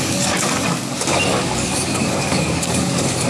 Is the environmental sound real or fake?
fake